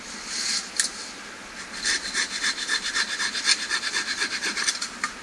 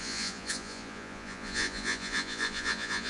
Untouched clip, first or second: first